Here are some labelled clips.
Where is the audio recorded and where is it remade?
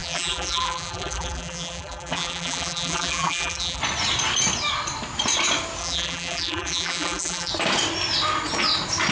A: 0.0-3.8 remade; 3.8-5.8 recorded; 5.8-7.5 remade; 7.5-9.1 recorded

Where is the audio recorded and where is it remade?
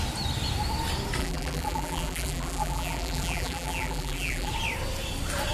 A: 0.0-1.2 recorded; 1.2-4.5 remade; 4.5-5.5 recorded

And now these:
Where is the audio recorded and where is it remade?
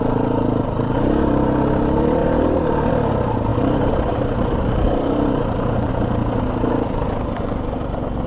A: 0.0-2.2 recorded; 2.2-2.9 remade; 2.9-3.5 recorded; 3.5-5.9 remade; 5.9-8.3 recorded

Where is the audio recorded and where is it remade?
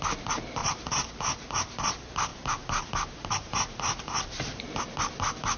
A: 0.0-0.6 recorded; 0.6-1.1 remade; 1.1-2.3 recorded; 2.3-4.8 remade; 4.8-5.6 recorded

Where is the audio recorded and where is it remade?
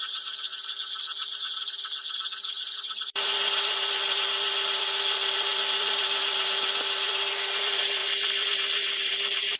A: 0.0-9.6 remade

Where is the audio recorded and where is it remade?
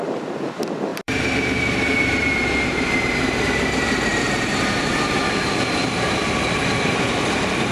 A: 0.0-0.9 recorded; 0.9-3.4 remade; 3.4-4.1 recorded; 4.1-5.2 remade; 5.2-7.7 recorded